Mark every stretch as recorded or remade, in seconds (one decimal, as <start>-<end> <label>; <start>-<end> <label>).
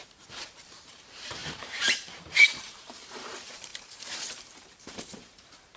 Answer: 0.0-5.8 remade